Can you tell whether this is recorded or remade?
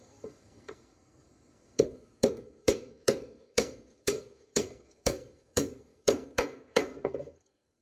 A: remade